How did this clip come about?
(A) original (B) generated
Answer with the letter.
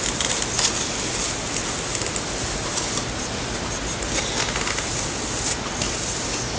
A